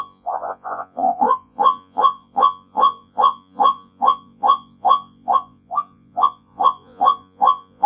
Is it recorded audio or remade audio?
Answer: remade